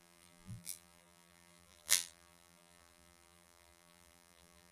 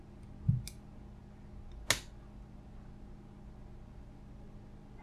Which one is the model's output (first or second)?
first